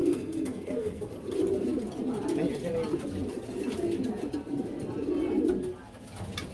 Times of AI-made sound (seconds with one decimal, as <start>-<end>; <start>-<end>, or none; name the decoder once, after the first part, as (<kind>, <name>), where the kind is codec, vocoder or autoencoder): 0.0-1.1 (codec, SNAC)